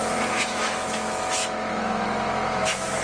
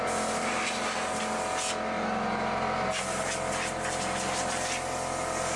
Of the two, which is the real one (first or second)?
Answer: second